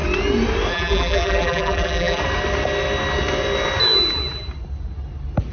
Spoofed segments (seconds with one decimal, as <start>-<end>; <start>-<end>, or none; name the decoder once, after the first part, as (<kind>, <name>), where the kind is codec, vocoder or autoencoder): 0.7-2.2 (vocoder, BigVGAN v2)

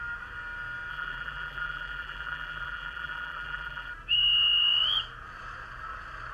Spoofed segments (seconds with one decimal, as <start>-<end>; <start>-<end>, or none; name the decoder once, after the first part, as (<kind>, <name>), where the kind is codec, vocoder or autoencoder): 0.9-3.9 (vocoder, BigVGAN v2)

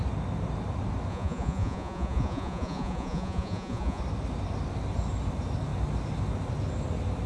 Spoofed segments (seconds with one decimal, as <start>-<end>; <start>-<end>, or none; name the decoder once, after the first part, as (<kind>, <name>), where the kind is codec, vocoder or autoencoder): 1.1-4.0 (vocoder, Vocos)

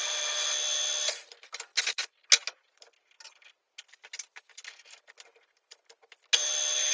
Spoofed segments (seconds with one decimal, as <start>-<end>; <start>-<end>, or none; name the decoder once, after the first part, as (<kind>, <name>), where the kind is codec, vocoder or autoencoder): none

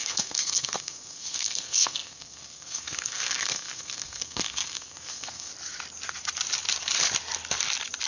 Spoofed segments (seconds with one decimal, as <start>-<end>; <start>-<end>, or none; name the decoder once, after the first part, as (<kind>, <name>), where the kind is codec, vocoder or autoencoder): 0.0-5.5 (codec, SNAC)

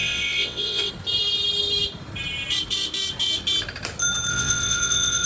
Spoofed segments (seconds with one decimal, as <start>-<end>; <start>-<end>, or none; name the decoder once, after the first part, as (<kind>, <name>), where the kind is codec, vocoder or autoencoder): 0.0-0.9 (vocoder, WaveNeXt); 4.3-5.3

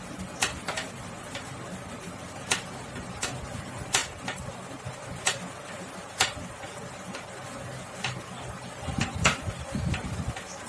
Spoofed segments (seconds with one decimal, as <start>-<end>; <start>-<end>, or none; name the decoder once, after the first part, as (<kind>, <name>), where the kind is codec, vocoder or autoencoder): none